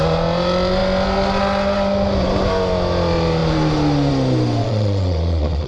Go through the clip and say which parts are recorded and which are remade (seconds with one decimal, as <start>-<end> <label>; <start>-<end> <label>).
0.0-4.6 recorded; 4.6-5.7 remade